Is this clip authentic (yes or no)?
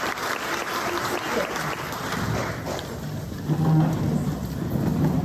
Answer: yes